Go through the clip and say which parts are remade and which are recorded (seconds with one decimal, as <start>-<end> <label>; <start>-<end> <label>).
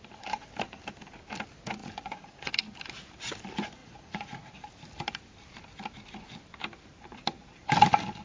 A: 0.0-1.8 recorded; 1.8-2.5 remade; 2.5-3.8 recorded; 3.8-4.5 remade; 4.5-8.2 recorded